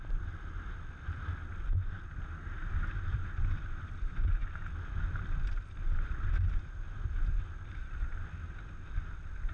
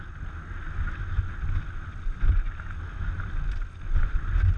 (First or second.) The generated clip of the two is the first